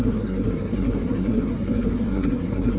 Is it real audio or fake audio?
fake